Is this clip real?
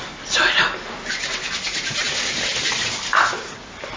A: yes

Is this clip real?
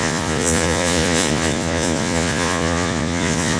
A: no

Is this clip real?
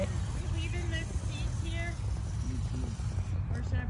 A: yes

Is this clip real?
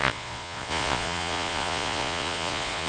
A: no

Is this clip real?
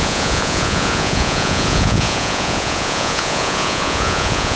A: no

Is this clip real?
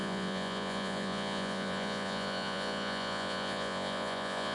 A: no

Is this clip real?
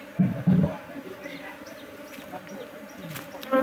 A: yes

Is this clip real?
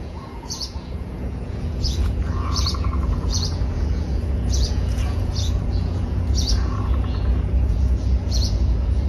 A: no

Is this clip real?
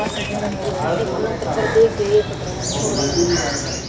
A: yes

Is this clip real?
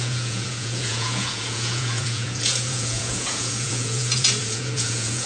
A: no